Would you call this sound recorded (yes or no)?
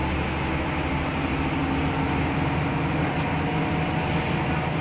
yes